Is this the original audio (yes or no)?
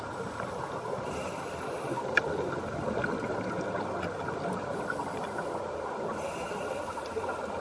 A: yes